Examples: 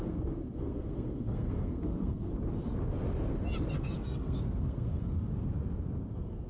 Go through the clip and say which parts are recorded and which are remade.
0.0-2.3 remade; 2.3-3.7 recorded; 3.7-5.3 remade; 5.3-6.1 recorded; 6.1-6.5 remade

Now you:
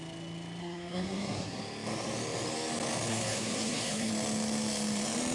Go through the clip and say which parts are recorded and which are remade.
0.0-0.6 recorded; 0.6-1.6 remade; 1.6-3.1 recorded; 3.1-4.1 remade; 4.1-5.3 recorded

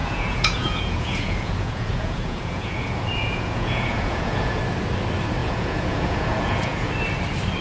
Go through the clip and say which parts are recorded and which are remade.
0.0-4.6 remade; 4.6-5.4 recorded; 5.4-6.9 remade; 6.9-7.6 recorded

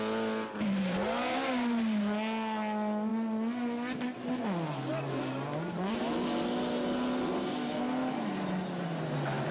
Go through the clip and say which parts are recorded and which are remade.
0.0-9.5 recorded

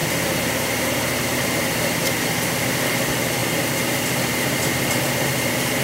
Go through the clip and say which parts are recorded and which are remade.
0.0-5.8 recorded

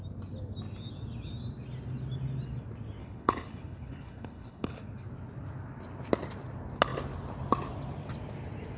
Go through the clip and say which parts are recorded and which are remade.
0.0-3.0 recorded; 3.0-4.7 remade; 4.7-8.8 recorded

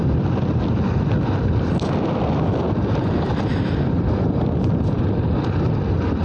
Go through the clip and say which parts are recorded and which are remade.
0.0-6.2 remade

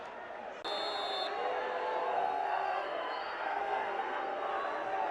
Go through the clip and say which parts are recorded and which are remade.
0.0-2.0 recorded; 2.0-4.5 remade; 4.5-5.1 recorded